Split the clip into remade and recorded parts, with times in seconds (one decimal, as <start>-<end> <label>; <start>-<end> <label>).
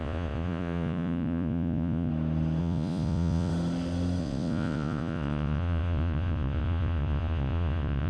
0.0-2.1 remade; 2.1-2.6 recorded; 2.6-3.5 remade; 3.5-4.2 recorded; 4.2-8.1 remade